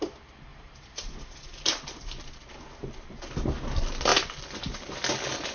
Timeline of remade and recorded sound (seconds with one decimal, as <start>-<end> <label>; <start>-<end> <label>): 0.0-0.5 recorded; 0.5-2.5 remade; 2.5-5.5 recorded